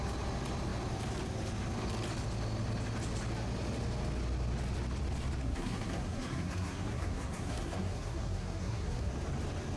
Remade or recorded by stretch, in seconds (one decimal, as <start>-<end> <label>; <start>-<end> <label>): 0.0-5.4 recorded; 5.4-9.1 remade; 9.1-9.8 recorded